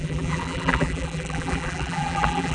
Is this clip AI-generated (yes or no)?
yes